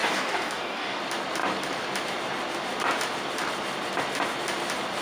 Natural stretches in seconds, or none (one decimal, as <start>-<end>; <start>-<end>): 1.0-5.0